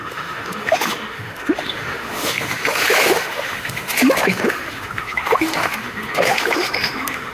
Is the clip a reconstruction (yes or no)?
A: yes